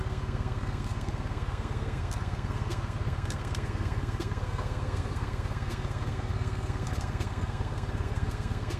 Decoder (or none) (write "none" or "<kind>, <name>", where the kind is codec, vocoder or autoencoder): codec, SNAC